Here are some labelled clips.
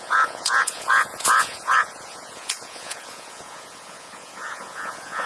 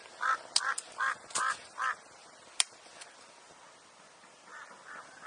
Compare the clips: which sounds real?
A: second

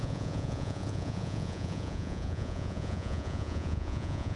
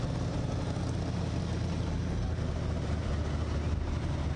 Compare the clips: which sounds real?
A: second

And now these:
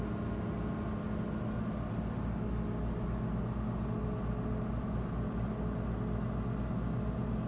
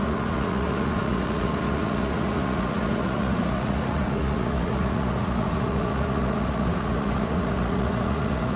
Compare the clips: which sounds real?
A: first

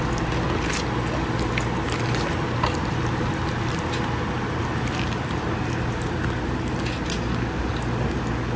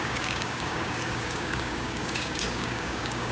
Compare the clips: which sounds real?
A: first